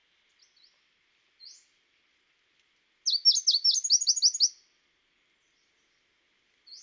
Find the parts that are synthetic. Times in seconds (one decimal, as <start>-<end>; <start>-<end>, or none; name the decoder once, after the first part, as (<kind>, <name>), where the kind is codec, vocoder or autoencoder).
none